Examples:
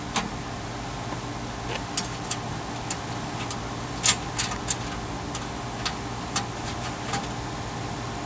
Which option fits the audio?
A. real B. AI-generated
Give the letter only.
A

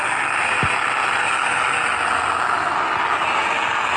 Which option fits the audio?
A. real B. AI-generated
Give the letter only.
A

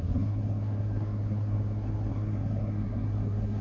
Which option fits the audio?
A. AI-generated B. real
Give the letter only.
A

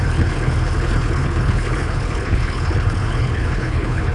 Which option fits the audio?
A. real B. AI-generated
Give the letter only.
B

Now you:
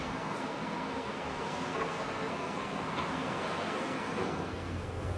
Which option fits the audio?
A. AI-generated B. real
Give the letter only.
A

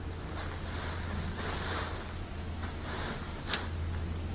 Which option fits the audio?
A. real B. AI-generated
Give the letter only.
A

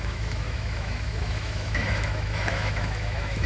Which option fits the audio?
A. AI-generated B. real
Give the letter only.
A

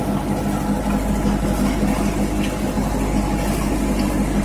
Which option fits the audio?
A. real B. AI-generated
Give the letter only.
A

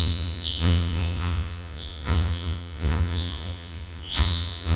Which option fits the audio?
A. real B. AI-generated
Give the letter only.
B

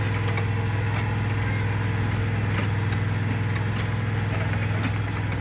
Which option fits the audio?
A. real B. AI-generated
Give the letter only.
A